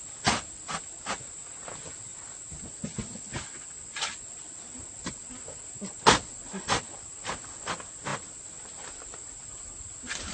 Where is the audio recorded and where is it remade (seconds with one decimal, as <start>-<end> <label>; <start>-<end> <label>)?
0.0-8.1 recorded; 8.1-10.3 remade